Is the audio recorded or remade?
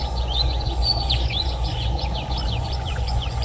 remade